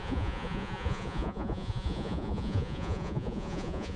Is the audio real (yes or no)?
no